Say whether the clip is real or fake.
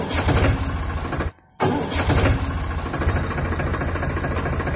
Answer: real